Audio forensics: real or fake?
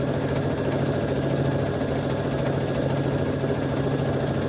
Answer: real